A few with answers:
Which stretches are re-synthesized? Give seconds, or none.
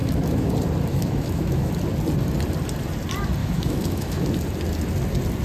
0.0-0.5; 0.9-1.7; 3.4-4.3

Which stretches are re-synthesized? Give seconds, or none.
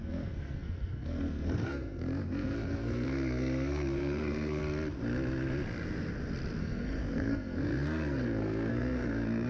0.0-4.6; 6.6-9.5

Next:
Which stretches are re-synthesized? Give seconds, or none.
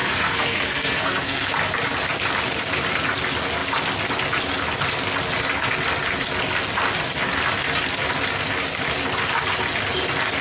0.0-1.5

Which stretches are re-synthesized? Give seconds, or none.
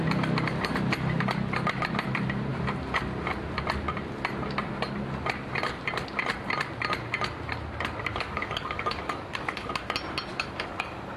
8.1-9.7; 10.3-11.2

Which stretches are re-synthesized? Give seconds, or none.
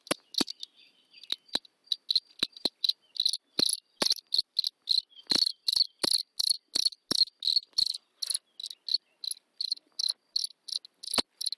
none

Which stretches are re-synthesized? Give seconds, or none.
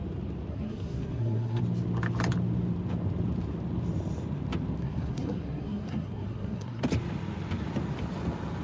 0.5-1.6; 4.8-6.8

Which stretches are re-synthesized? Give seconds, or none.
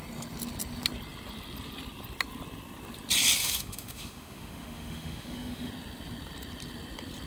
3.4-5.7